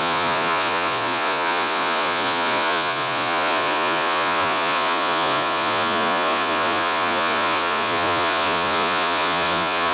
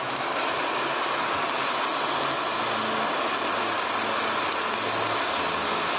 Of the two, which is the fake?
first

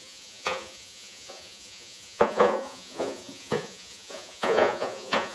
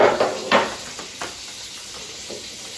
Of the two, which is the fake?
first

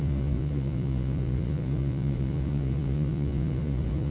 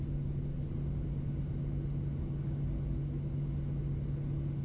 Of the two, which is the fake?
first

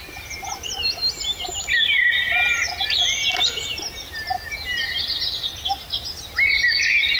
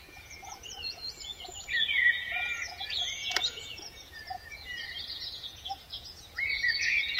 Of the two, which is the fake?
second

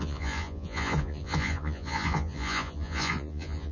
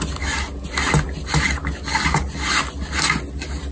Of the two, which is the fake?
first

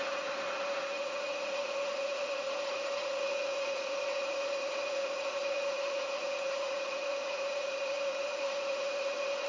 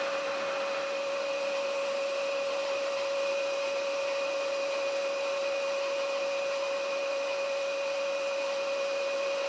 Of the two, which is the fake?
first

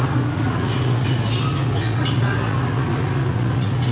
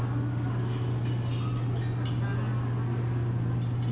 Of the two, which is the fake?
first